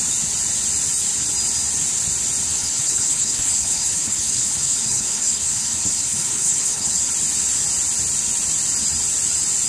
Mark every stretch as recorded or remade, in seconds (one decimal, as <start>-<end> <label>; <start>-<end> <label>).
0.0-2.5 recorded; 2.5-7.1 remade; 7.1-9.7 recorded